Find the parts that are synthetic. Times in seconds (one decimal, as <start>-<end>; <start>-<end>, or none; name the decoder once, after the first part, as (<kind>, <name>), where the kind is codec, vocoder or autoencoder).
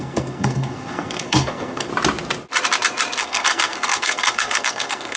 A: 0.0-1.9 (codec, SNAC); 3.2-5.2